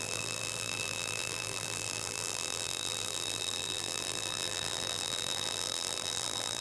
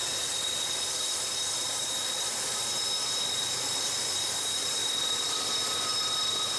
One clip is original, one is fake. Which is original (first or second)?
second